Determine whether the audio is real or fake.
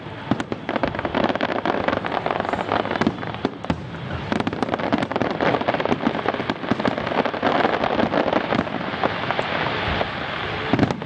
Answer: real